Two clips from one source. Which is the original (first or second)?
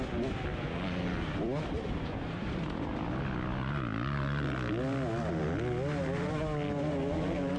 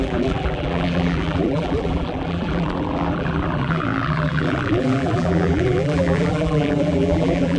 first